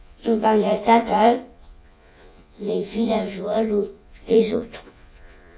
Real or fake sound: fake